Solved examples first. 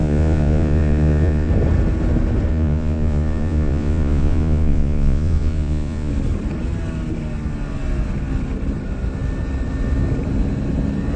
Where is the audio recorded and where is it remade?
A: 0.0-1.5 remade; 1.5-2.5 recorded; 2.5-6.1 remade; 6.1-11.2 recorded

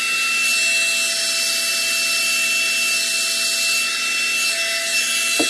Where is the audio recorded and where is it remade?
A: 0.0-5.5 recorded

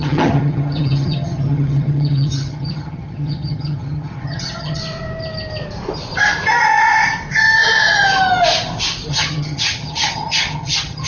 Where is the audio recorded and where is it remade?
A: 0.0-4.8 remade; 4.8-9.1 recorded; 9.1-11.1 remade